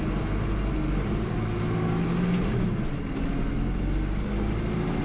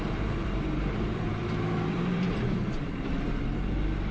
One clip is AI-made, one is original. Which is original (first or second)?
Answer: first